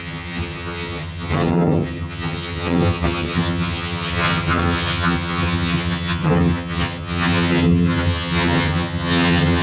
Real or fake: fake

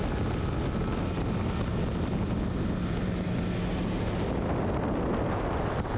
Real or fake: real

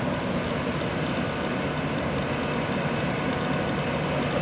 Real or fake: real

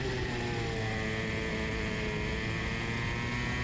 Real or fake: real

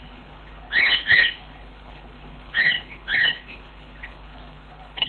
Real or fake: fake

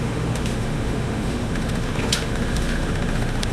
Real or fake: fake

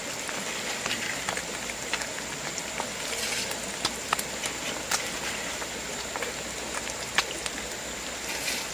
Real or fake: real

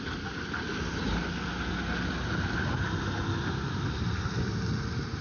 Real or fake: real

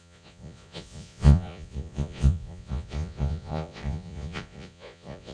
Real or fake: fake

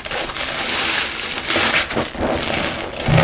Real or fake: real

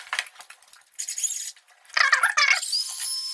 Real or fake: real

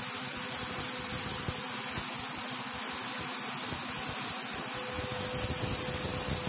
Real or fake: real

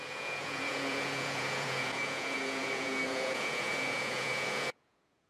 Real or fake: fake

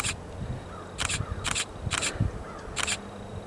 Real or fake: real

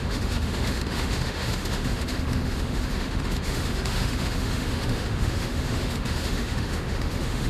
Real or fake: fake